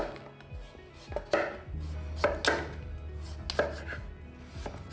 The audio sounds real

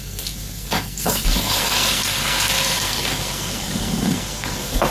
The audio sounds fake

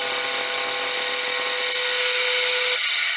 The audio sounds real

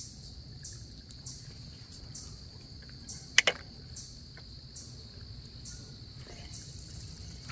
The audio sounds real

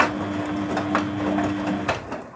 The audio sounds real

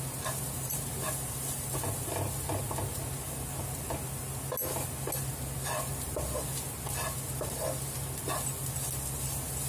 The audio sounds real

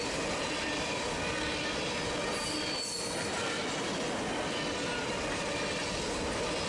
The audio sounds real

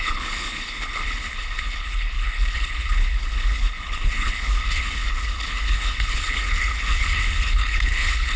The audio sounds fake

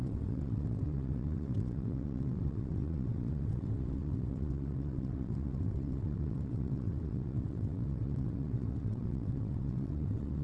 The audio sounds fake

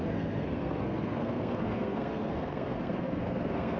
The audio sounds fake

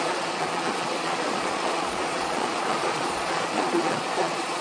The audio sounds fake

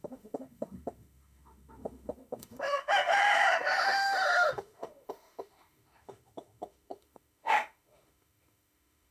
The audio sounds fake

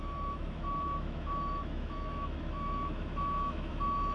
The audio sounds fake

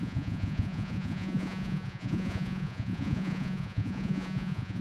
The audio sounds fake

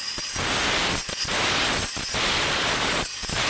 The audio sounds real